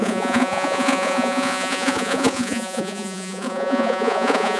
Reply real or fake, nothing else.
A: fake